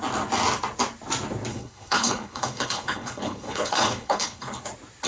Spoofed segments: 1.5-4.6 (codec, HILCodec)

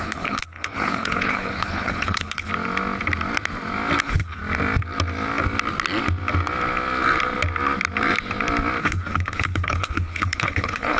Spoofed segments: 0.0-2.5 (codec, HILCodec); 4.0-4.4; 8.8-11.0

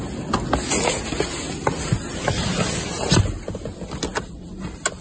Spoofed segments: none

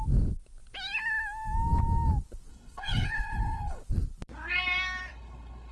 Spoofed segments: 2.5-3.8 (codec, HILCodec); 5.1-5.7

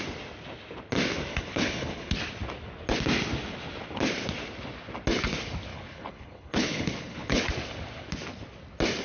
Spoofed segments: 1.3-2.1 (codec, HILCodec); 5.7-7.4